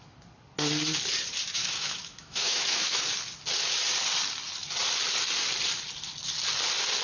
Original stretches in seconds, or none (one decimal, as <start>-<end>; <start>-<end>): 0.0-1.6; 3.0-7.0